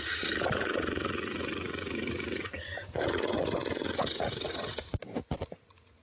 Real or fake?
fake